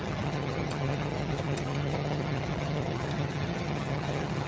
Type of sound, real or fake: fake